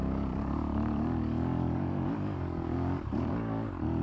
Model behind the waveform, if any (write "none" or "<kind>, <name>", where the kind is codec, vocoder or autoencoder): codec, DAC